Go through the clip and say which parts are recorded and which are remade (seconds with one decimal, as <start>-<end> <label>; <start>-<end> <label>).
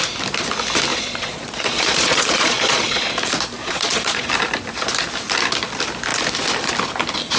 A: 0.0-0.9 recorded; 0.9-3.1 remade; 3.1-3.6 recorded; 3.6-4.3 remade; 4.3-7.4 recorded